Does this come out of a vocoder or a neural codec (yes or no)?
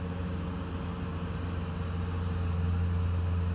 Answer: no